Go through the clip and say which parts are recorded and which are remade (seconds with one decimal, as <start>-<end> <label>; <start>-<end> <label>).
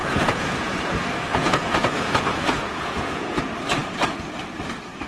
0.0-0.8 remade; 0.8-1.3 recorded; 1.3-3.4 remade; 3.4-5.1 recorded